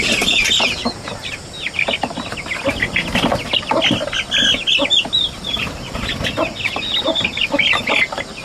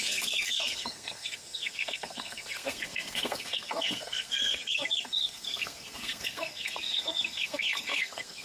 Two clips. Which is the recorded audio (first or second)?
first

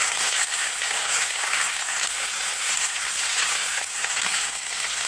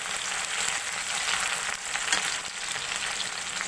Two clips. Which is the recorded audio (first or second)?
second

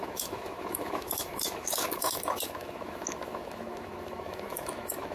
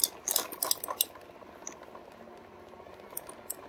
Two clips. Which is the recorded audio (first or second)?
second